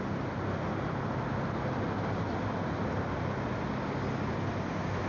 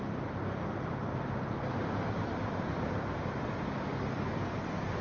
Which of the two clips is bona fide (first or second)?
first